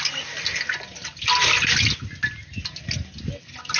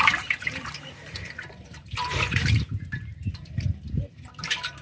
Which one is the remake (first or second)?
second